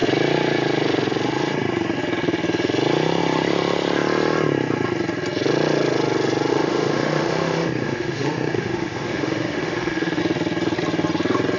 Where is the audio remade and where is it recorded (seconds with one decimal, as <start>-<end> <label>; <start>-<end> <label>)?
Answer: 0.0-6.5 recorded; 6.5-10.2 remade; 10.2-11.6 recorded